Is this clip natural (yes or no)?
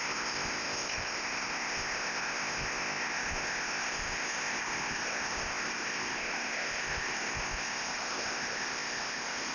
no